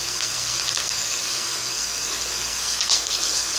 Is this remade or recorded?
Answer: remade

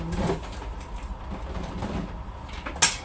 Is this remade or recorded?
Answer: recorded